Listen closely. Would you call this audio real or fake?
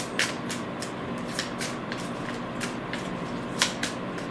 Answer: real